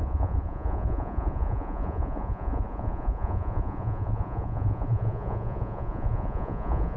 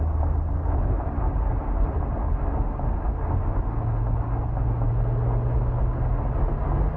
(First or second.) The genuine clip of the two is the second